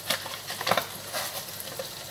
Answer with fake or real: real